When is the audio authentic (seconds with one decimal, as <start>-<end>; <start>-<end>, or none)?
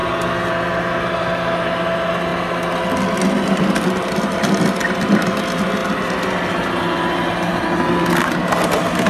0.0-9.1